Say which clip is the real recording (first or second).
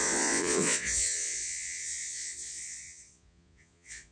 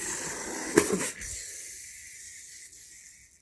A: second